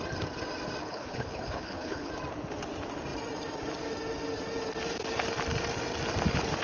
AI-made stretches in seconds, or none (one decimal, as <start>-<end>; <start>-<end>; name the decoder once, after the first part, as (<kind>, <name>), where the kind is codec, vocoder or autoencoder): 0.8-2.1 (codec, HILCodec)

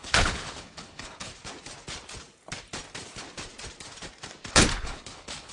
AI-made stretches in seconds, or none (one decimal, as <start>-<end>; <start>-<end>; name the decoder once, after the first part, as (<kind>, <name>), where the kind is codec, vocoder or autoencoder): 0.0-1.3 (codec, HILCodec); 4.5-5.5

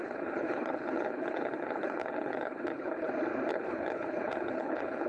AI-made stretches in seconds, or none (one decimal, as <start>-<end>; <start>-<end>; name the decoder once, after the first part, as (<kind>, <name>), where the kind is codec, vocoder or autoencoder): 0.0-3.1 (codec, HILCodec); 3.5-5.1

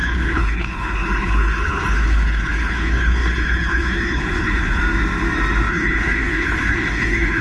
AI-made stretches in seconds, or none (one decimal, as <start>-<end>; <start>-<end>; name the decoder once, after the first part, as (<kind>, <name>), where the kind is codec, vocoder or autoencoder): 0.0-4.8 (codec, HILCodec); 5.7-7.4

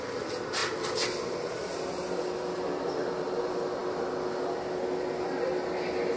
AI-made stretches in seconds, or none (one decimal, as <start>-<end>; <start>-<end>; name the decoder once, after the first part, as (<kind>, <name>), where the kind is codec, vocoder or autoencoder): none